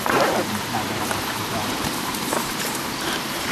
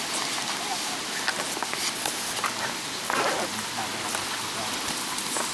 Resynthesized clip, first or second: first